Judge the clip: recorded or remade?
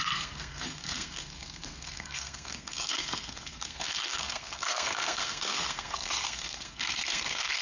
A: remade